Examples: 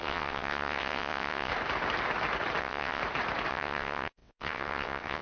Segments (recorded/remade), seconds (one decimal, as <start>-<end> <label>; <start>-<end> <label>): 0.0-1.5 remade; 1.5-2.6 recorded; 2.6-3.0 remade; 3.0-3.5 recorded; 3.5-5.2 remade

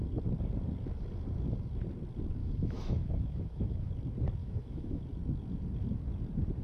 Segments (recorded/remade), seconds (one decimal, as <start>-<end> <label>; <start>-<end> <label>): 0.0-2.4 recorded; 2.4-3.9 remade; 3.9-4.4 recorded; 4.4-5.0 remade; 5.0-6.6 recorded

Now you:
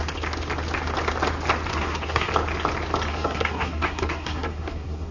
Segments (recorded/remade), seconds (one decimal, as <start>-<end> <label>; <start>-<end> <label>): 0.0-1.7 recorded; 1.7-2.3 remade; 2.3-3.1 recorded; 3.1-5.1 remade

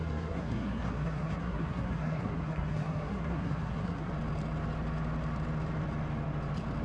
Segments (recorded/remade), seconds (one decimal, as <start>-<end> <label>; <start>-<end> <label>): 0.0-4.1 remade; 4.1-6.8 recorded

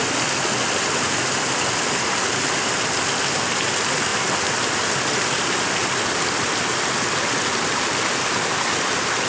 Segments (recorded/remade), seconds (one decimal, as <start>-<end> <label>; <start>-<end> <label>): 0.0-9.3 recorded

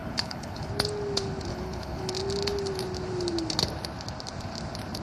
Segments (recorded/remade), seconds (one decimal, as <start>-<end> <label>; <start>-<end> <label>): 0.0-0.7 remade; 0.7-1.5 recorded; 1.5-2.1 remade; 2.1-5.0 recorded

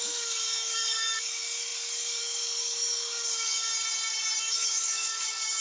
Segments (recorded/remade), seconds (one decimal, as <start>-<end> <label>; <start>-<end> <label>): 0.0-3.7 remade; 3.7-4.4 recorded; 4.4-5.6 remade

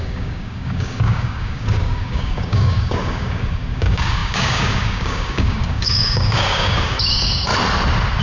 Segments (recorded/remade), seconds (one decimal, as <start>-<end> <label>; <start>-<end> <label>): 0.0-7.5 remade; 7.5-8.2 recorded